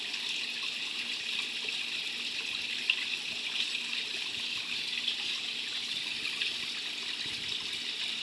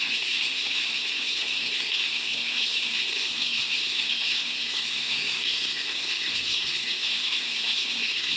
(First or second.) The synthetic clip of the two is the second